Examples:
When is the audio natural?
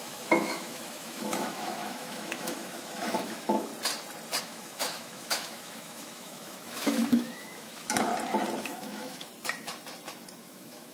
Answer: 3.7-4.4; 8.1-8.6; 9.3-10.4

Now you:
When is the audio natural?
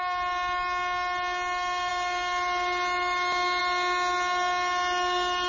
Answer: 0.0-5.5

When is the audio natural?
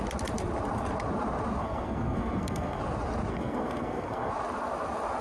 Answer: 0.0-1.6; 2.8-3.3; 4.3-5.2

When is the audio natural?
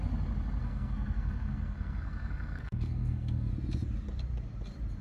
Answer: 0.0-0.6; 3.5-5.0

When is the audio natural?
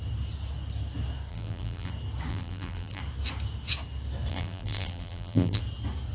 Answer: 0.0-1.3; 1.9-2.3; 3.0-4.3; 5.6-6.1